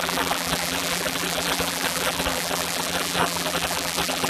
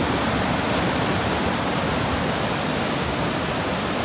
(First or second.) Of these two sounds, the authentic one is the second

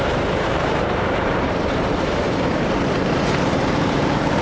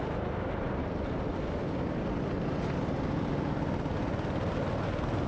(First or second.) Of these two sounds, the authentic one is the second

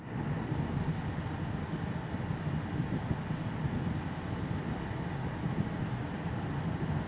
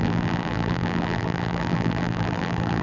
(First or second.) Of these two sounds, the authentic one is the first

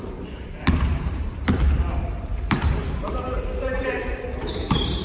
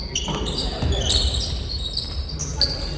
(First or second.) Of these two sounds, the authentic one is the second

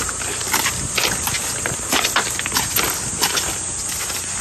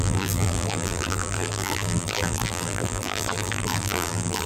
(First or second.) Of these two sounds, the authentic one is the first